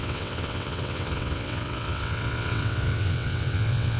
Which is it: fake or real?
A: fake